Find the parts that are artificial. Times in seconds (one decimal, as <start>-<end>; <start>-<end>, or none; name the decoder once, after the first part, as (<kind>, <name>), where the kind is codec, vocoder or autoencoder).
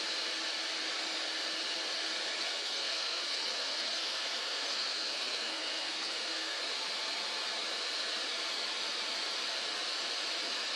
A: 2.4-6.6 (codec, SNAC)